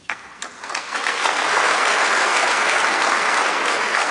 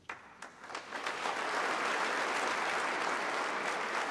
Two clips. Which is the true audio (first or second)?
second